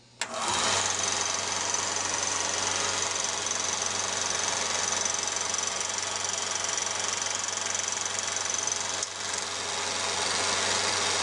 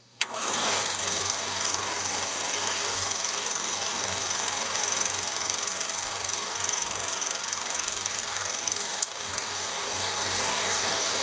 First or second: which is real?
first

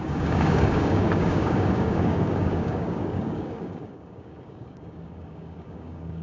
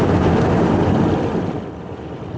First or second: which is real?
second